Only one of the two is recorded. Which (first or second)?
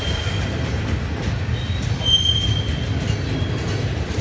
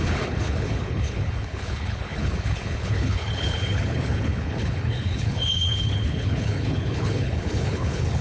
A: first